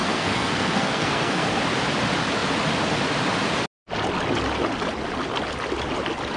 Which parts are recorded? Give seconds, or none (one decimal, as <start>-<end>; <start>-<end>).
1.6-6.4